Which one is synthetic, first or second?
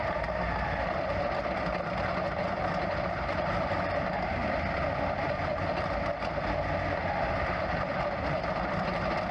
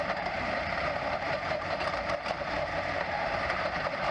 second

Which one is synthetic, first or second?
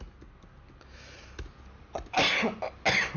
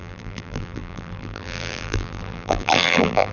second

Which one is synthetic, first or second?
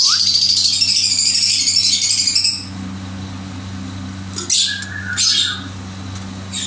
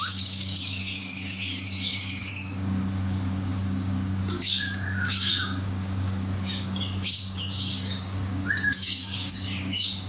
second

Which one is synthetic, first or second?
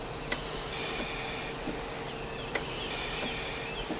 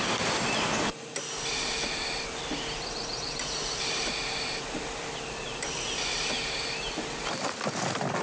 second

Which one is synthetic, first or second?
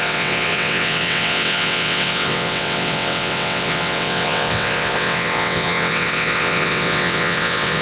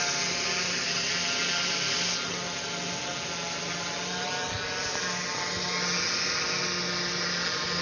first